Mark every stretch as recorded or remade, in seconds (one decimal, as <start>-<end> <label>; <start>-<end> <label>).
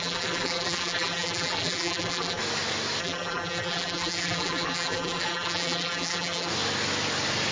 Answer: 0.0-2.4 remade; 2.4-3.0 recorded; 3.0-6.5 remade; 6.5-7.5 recorded